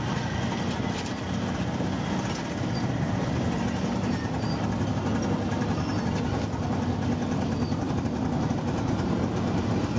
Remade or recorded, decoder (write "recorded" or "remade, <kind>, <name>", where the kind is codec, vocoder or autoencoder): recorded